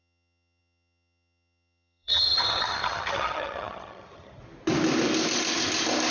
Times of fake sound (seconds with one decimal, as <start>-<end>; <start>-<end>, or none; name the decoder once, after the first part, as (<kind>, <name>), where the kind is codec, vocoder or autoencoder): 0.0-4.4 (vocoder, HiFi-GAN)